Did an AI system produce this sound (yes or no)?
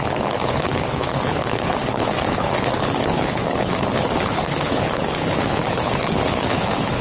yes